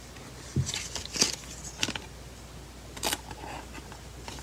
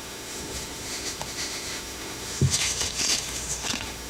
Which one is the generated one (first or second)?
second